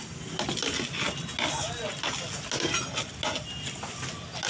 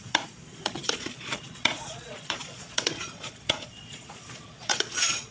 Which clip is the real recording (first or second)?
first